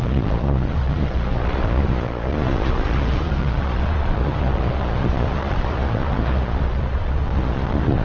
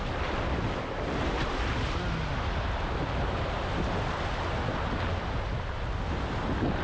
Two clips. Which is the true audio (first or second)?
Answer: second